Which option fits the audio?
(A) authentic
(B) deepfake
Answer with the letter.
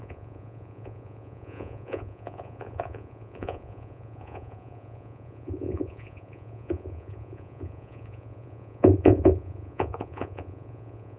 B